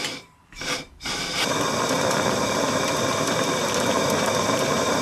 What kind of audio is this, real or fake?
fake